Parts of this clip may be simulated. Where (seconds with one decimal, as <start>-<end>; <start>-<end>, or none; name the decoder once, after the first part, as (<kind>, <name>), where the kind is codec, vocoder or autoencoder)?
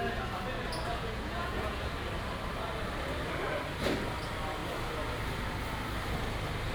0.9-1.9 (vocoder, Vocos)